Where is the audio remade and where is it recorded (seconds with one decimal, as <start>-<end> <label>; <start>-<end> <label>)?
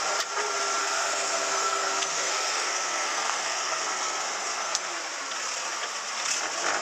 0.0-0.8 recorded; 0.8-4.9 remade; 4.9-6.8 recorded